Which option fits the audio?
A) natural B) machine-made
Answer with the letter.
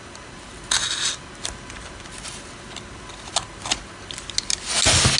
A